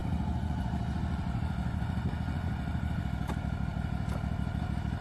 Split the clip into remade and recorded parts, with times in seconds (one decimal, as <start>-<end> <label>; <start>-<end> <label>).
0.0-3.0 remade; 3.0-5.0 recorded